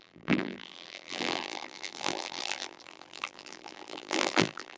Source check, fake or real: fake